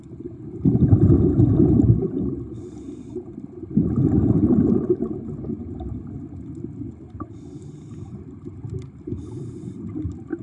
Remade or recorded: remade